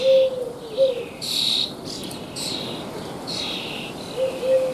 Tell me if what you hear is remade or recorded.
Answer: recorded